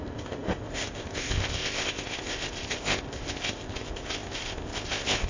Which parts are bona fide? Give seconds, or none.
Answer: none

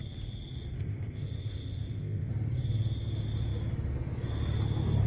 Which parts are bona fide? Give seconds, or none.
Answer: 0.0-0.8; 2.3-5.1

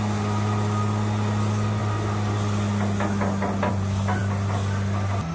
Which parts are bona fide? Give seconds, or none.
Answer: 0.0-5.3

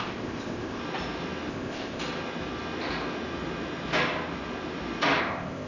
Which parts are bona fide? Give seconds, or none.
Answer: 0.8-1.5; 2.0-5.2

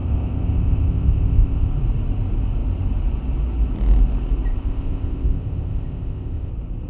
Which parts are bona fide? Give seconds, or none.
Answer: 1.7-4.5; 6.5-6.9

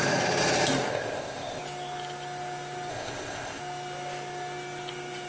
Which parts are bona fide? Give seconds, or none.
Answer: 0.0-0.9; 1.6-2.9; 3.6-5.3